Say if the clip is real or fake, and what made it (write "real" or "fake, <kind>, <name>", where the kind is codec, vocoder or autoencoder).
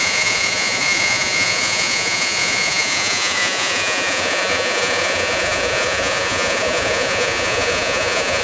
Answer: fake, vocoder, Vocos